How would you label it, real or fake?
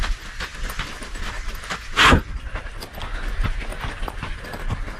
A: real